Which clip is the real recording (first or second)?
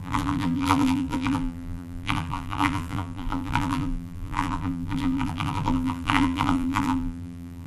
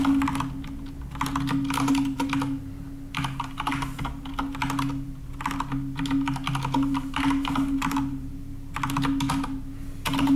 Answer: second